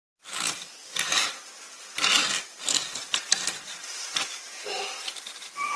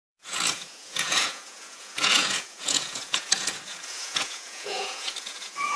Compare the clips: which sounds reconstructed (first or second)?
second